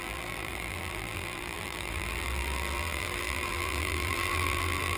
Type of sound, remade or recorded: remade